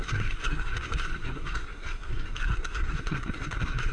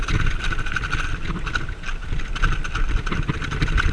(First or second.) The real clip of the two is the second